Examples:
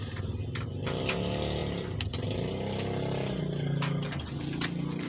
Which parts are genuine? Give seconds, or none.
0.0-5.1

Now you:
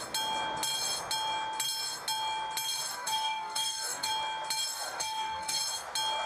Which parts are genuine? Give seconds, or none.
0.0-2.9; 4.1-4.7; 5.6-6.3

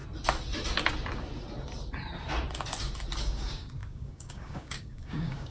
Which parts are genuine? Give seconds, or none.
0.0-3.2

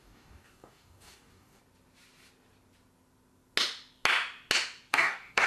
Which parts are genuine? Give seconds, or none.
1.6-4.9

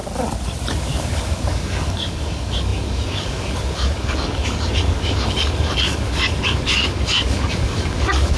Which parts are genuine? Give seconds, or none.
0.0-0.8

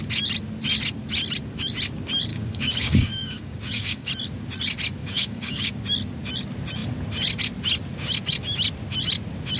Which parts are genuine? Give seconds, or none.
0.0-2.3; 4.1-5.0; 5.7-9.6

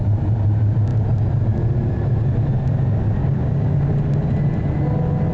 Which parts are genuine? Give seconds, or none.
0.0-3.2; 3.9-5.3